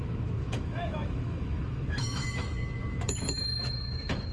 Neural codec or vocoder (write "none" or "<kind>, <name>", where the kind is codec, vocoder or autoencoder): autoencoder, DAC-VAE